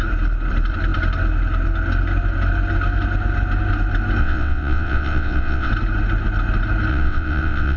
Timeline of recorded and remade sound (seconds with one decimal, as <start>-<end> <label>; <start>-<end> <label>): 0.0-4.2 recorded; 4.2-5.7 remade; 5.7-6.9 recorded; 6.9-7.8 remade